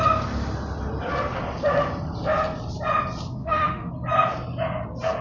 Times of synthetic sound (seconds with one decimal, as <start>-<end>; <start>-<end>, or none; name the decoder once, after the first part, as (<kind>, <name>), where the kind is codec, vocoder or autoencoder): 3.4-3.9 (autoencoder, DAC-VAE)